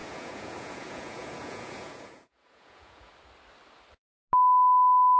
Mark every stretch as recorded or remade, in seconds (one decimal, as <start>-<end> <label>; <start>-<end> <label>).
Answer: 0.0-3.1 remade; 3.1-5.2 recorded